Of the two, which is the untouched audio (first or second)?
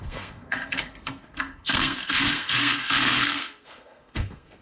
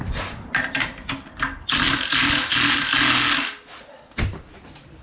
second